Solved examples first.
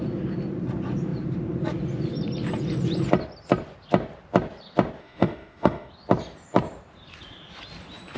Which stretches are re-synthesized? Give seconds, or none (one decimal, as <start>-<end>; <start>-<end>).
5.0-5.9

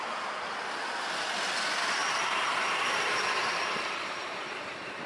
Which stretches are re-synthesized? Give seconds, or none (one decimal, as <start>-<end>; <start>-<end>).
2.0-5.1

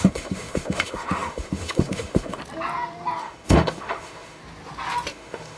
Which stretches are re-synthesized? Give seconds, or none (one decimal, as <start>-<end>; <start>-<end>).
0.0-2.4; 3.2-4.4; 5.1-5.6

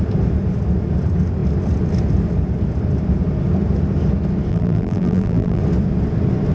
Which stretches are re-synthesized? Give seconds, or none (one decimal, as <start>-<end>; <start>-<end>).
4.5-5.6

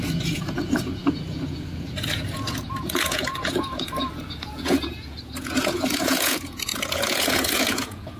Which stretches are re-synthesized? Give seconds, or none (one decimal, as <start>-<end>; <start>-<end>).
0.0-8.2